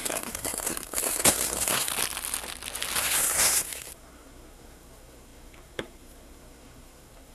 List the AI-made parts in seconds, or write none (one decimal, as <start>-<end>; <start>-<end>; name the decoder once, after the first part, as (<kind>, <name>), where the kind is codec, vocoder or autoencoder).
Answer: 0.0-1.9 (codec, SNAC); 3.0-7.3